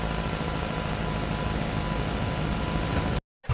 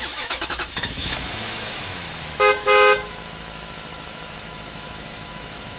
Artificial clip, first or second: second